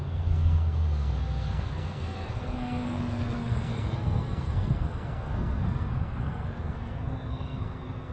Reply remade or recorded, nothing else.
remade